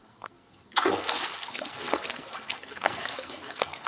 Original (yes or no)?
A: no